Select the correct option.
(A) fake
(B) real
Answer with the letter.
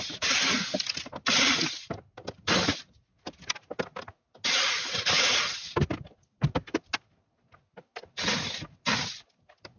B